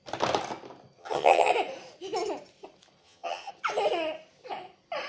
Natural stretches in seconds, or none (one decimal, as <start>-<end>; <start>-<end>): 0.0-1.0; 1.5-3.0; 3.5-5.1